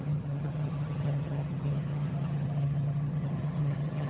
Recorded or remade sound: remade